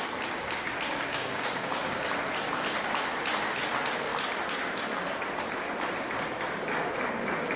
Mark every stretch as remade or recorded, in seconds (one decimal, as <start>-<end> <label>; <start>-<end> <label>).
0.0-1.1 recorded; 1.1-2.0 remade; 2.0-7.6 recorded